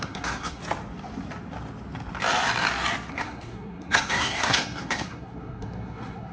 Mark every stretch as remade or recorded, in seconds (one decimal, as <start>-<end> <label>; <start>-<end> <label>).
0.0-0.6 remade; 0.6-3.1 recorded; 3.1-6.3 remade